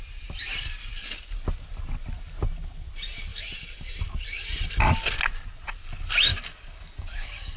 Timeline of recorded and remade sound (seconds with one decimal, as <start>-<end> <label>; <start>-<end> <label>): 0.0-6.3 recorded; 6.3-7.6 remade